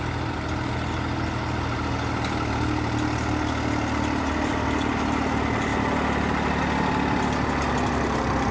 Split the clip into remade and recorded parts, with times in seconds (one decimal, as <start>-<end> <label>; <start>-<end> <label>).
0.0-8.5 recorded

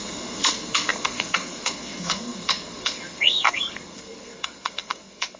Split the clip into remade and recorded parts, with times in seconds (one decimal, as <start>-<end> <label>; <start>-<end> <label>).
0.0-5.4 remade

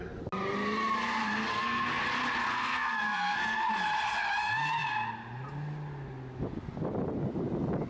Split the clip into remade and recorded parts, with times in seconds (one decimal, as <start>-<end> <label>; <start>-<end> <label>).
0.0-1.5 recorded; 1.5-2.0 remade; 2.0-2.5 recorded; 2.5-3.7 remade; 3.7-7.9 recorded

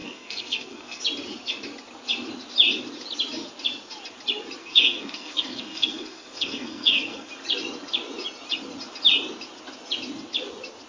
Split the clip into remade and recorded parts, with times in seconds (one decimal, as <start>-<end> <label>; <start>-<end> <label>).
0.0-1.0 remade; 1.0-4.6 recorded; 4.6-7.3 remade; 7.3-10.9 recorded

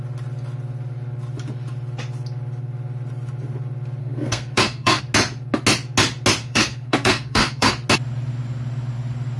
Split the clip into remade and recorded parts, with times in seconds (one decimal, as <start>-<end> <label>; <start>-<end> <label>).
0.0-4.0 recorded; 4.0-5.0 remade; 5.0-6.4 recorded; 6.4-7.7 remade; 7.7-9.4 recorded

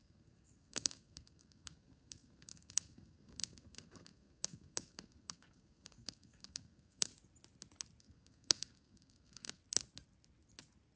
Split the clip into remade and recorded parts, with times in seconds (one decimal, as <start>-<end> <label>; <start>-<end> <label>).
0.0-7.1 remade; 7.1-8.0 recorded; 8.0-9.6 remade; 9.6-11.0 recorded

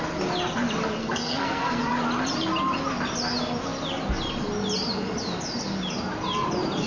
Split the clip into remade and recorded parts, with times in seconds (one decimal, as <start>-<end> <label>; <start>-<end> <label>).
0.0-1.0 recorded; 1.0-1.8 remade; 1.8-6.9 recorded